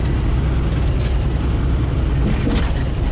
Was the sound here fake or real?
real